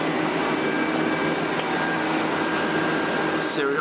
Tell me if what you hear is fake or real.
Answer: real